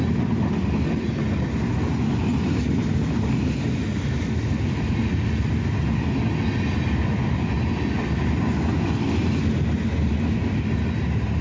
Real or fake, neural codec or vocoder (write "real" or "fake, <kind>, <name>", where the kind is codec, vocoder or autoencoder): real